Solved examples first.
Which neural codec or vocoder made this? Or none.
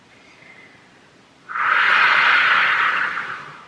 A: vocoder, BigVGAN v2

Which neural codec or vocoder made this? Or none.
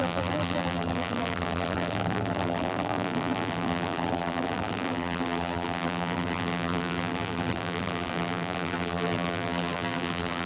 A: vocoder, BigVGAN v2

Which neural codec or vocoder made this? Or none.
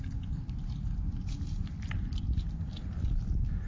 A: none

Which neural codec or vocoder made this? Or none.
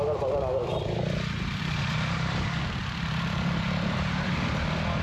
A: vocoder, BigVGAN v2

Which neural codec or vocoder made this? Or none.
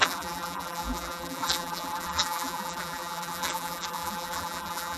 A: vocoder, BigVGAN v2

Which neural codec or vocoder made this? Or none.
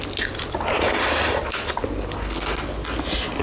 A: none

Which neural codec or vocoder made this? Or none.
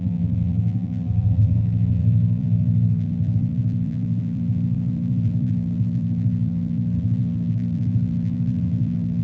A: vocoder, BigVGAN v2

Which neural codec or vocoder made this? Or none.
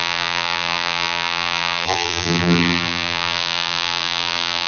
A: vocoder, BigVGAN v2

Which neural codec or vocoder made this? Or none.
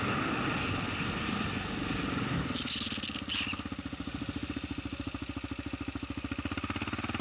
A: none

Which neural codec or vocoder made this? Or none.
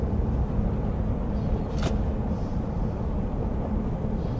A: none